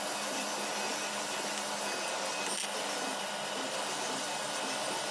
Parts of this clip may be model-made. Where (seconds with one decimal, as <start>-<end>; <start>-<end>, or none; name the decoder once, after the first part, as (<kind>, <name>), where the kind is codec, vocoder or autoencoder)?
none